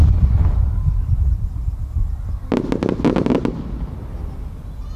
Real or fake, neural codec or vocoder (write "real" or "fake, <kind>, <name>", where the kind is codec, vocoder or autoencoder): real